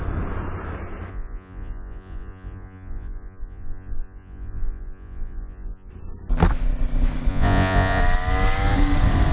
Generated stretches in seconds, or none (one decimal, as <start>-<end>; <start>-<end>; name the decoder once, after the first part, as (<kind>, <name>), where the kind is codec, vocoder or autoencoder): 1.1-5.9 (vocoder, Vocos); 7.3-8.0